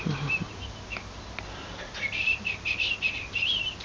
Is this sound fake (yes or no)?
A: no